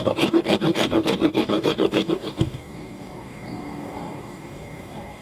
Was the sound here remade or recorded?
remade